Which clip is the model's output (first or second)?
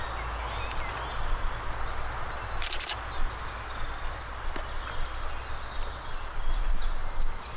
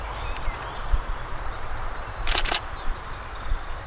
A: second